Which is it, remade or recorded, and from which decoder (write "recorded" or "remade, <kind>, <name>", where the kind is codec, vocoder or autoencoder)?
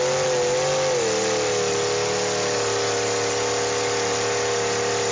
recorded